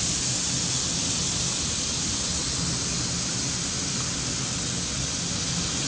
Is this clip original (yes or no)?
yes